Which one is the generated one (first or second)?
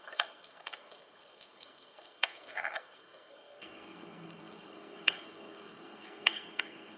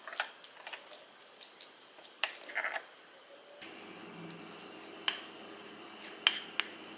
first